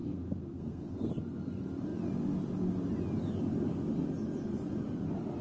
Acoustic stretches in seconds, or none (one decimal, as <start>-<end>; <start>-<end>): 1.1-5.4